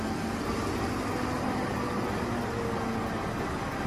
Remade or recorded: recorded